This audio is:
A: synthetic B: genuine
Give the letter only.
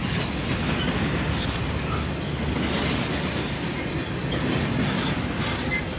B